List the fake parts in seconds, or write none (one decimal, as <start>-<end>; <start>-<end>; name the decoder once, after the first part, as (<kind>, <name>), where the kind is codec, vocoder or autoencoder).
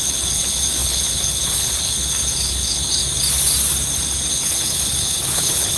0.0-3.0 (codec, HILCodec); 4.3-5.8